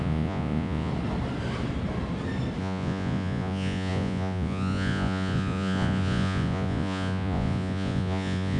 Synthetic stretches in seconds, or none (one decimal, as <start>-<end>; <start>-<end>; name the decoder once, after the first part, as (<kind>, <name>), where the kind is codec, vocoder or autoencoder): 0.0-0.9 (vocoder, Vocos); 2.6-8.6